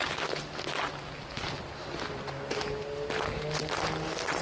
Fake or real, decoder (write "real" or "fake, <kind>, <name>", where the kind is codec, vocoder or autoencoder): real